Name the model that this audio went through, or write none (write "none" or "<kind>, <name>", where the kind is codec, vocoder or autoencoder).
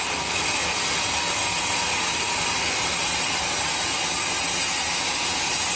none